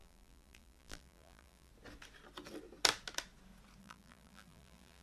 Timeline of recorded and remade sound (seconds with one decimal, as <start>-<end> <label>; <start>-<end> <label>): 0.0-1.7 remade; 1.7-3.8 recorded; 3.8-5.0 remade